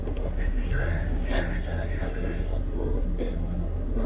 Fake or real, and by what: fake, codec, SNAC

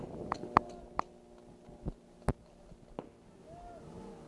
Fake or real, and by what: real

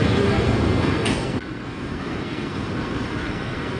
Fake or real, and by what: fake, codec, SNAC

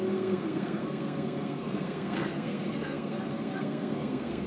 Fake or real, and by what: fake, codec, SNAC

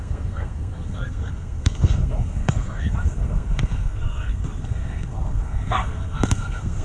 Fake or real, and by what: fake, codec, SNAC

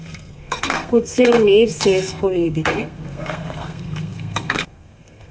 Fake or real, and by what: fake, codec, SNAC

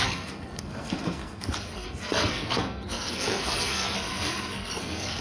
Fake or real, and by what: fake, codec, SNAC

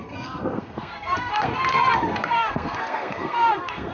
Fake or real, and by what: fake, codec, SNAC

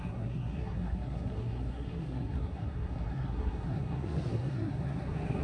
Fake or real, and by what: fake, codec, SNAC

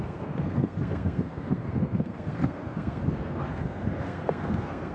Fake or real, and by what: fake, codec, SNAC